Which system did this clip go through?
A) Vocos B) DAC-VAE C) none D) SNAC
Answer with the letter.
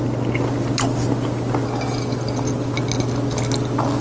C